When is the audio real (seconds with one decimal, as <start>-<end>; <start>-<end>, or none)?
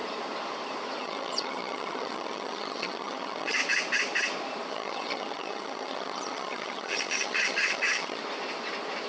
0.0-1.0; 3.6-4.7; 8.2-9.1